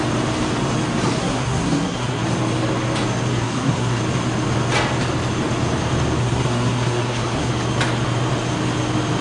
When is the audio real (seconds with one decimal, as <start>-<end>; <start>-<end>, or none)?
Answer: 0.0-1.2; 2.2-3.3; 4.0-6.2; 7.5-9.2